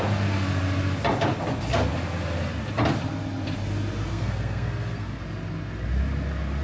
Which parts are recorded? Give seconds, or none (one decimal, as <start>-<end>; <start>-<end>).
0.0-4.1; 5.2-6.6